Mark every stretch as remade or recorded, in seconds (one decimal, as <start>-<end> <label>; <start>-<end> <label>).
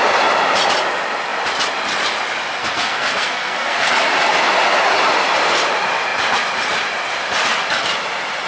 0.0-2.6 recorded; 2.6-3.9 remade; 3.9-8.5 recorded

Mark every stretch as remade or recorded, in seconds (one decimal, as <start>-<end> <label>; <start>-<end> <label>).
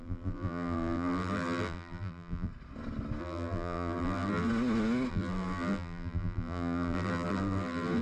0.0-2.5 remade; 2.5-3.2 recorded; 3.2-4.5 remade; 4.5-5.1 recorded; 5.1-8.0 remade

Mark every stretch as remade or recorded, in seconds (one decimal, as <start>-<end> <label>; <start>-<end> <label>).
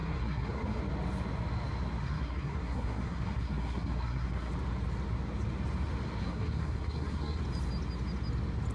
0.0-0.8 remade; 0.8-2.0 recorded; 2.0-4.5 remade; 4.5-6.2 recorded; 6.2-7.4 remade; 7.4-8.7 recorded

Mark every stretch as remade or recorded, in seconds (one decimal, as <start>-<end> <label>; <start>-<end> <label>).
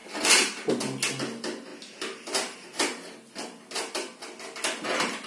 0.0-5.3 recorded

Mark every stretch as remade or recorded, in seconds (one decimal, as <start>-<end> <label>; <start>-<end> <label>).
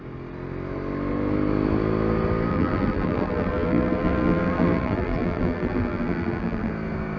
0.0-2.5 recorded; 2.5-6.7 remade; 6.7-7.2 recorded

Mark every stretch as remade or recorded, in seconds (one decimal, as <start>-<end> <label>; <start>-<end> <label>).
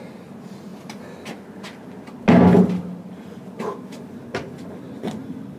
0.0-5.6 recorded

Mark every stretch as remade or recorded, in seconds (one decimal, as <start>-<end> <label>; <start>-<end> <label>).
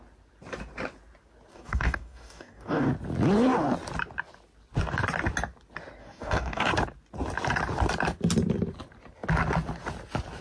0.0-1.5 recorded; 1.5-2.9 remade; 2.9-6.0 recorded; 6.0-6.7 remade; 6.7-10.4 recorded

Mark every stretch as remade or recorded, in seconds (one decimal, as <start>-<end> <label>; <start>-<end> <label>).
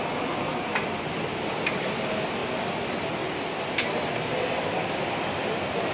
0.0-5.9 recorded